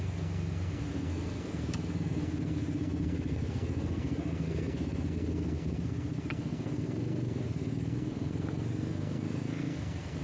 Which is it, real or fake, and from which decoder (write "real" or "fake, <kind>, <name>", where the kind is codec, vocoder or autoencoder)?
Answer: fake, codec, SNAC